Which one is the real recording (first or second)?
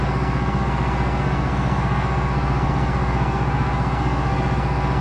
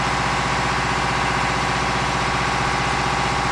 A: second